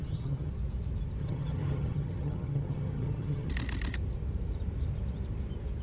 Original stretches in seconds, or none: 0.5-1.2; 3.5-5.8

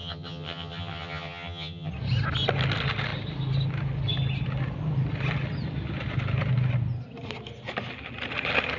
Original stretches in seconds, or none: 1.9-8.8

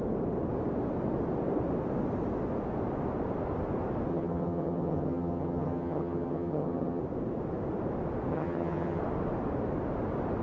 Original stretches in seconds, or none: 0.0-4.1; 7.0-8.3; 9.0-10.4

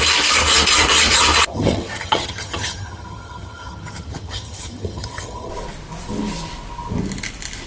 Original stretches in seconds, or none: 0.0-1.5; 5.5-7.7